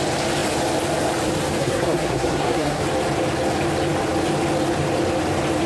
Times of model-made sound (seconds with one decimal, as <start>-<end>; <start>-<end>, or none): 1.6-2.8